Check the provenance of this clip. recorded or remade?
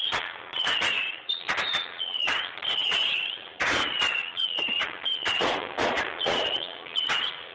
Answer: remade